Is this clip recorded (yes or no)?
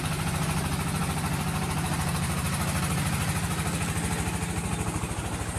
yes